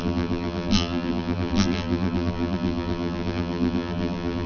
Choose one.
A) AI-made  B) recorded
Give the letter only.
A